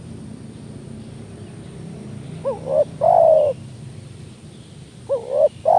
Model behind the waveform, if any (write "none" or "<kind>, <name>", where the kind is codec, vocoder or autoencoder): none